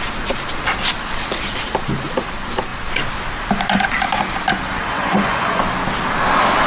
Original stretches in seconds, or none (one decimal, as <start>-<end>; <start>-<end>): 0.0-4.8; 5.6-6.7